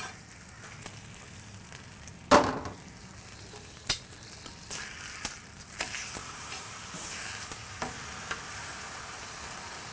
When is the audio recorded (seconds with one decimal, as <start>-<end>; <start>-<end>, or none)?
0.0-6.2; 7.2-9.9